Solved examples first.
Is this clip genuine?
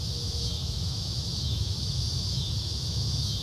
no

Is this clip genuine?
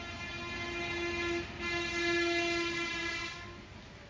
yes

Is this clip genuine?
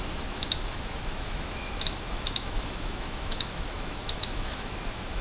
no